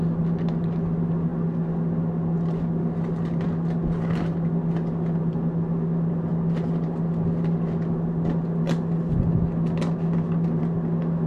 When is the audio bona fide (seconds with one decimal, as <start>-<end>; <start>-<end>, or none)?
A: 0.0-11.3